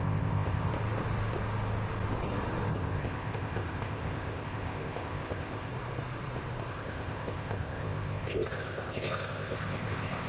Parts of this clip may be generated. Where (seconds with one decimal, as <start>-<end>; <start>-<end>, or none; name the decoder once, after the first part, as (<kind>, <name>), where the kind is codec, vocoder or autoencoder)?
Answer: 0.0-0.7 (codec, ZipCodec); 2.7-5.7; 6.7-10.3